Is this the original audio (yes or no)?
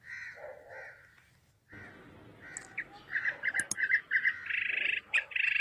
yes